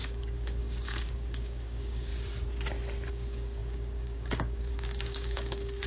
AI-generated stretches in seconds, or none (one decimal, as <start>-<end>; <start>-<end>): 0.0-2.1; 3.1-5.9